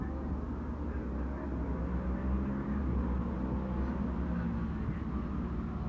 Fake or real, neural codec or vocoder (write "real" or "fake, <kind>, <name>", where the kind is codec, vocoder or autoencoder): real